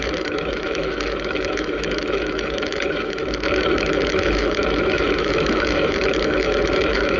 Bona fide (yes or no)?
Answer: no